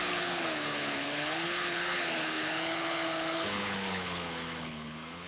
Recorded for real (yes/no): no